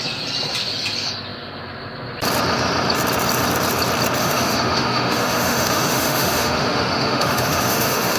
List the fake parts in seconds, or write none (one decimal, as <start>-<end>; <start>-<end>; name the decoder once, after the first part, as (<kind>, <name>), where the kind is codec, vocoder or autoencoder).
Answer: 4.2-8.2 (autoencoder, DAC-VAE)